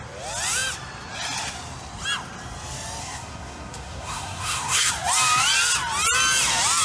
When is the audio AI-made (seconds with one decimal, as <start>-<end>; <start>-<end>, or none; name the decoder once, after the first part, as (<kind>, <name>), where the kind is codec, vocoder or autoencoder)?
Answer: 3.0-4.9 (codec, SNAC)

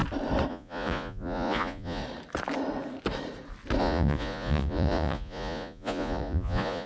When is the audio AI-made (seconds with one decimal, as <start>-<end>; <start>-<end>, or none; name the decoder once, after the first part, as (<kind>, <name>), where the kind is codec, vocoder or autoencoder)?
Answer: 0.5-2.0 (vocoder, Vocos); 3.8-6.9

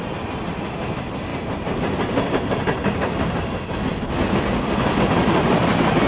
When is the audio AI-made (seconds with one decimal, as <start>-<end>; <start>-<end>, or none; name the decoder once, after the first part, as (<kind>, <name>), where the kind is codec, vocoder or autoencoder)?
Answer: none

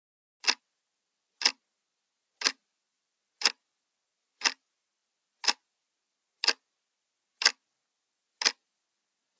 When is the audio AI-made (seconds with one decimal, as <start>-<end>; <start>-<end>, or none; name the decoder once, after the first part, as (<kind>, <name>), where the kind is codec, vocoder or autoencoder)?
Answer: none

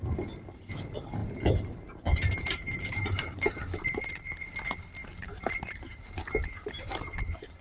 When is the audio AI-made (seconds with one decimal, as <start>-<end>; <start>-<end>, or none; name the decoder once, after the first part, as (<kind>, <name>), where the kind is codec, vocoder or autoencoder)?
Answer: 1.2-3.8 (vocoder, BigVGAN v2); 5.0-7.6

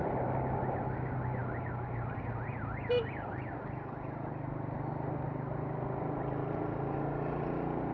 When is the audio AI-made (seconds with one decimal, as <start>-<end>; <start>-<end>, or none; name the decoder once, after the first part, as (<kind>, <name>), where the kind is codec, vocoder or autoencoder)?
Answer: none